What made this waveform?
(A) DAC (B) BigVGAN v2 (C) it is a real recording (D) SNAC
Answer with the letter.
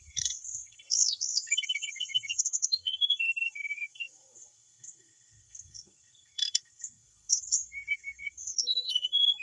D